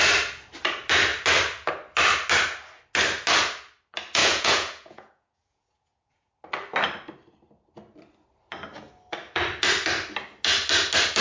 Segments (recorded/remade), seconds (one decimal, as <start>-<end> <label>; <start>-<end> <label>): 0.0-4.2 recorded; 4.2-6.3 remade; 6.3-11.2 recorded